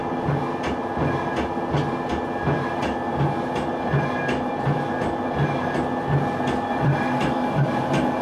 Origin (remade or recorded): recorded